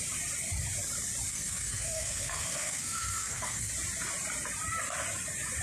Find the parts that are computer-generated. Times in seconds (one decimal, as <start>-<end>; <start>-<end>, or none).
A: 1.3-3.7